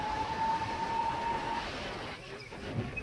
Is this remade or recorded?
recorded